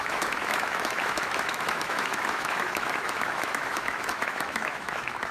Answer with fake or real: fake